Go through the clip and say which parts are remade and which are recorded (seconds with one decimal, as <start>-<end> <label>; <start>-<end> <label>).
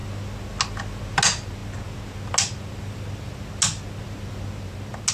0.0-5.1 recorded